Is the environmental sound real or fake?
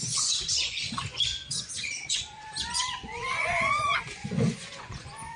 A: fake